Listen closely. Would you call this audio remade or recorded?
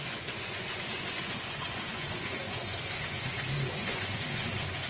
remade